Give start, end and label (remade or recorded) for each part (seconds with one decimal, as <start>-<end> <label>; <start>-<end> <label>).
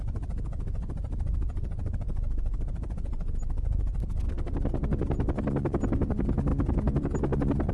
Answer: 0.0-7.7 remade